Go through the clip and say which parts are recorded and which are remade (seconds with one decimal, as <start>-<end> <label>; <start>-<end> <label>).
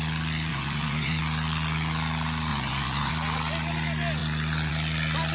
0.0-0.5 recorded; 0.5-1.2 remade; 1.2-2.5 recorded; 2.5-3.1 remade; 3.1-5.3 recorded